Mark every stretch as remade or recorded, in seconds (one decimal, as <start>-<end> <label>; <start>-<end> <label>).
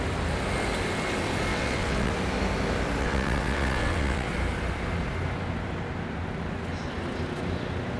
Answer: 0.0-1.5 recorded; 1.5-2.1 remade; 2.1-3.0 recorded; 3.0-4.3 remade; 4.3-8.0 recorded